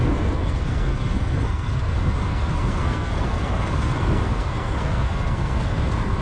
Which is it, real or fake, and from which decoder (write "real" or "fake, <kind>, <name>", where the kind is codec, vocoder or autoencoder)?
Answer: fake, codec, SNAC